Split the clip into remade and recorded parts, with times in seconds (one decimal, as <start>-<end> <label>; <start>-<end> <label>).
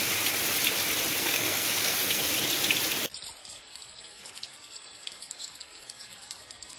0.0-1.1 recorded; 1.1-2.3 remade; 2.3-3.4 recorded; 3.4-6.8 remade